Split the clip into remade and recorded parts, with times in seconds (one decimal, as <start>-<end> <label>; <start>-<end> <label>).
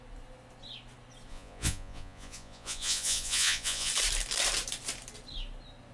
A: 0.0-1.3 recorded; 1.3-3.9 remade; 3.9-5.9 recorded